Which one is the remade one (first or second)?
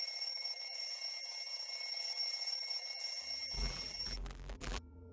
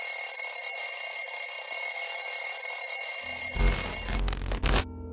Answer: first